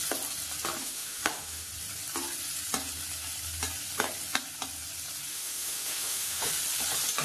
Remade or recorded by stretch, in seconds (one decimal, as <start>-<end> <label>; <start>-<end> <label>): 0.0-0.8 recorded; 0.8-1.7 remade; 1.7-5.3 recorded; 5.3-6.5 remade; 6.5-7.2 recorded